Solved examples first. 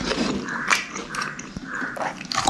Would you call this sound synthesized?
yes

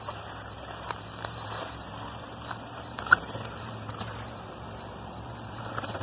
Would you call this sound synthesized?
yes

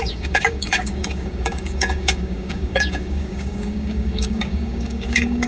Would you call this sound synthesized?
yes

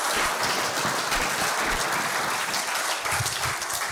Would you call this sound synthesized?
no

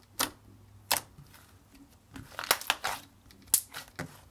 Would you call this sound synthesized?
no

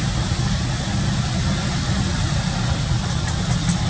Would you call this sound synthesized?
no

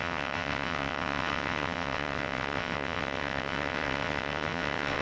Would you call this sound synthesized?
yes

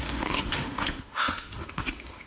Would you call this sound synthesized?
yes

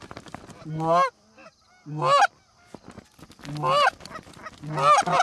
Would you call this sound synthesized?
no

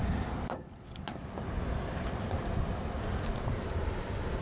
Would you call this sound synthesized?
no